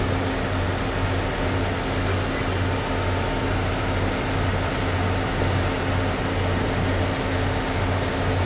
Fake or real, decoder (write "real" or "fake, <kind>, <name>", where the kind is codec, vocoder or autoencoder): real